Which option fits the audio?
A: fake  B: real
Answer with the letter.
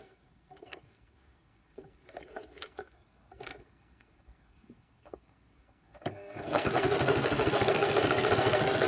A